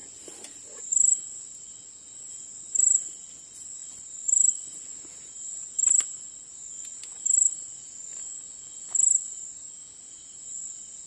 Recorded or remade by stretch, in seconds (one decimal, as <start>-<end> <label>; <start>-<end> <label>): 0.0-11.1 recorded